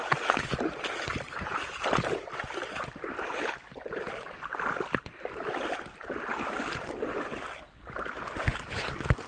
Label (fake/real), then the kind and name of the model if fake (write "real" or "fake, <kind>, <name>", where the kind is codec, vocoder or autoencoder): real